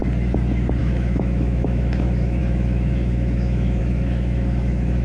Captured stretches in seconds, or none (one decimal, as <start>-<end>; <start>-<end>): 0.0-0.8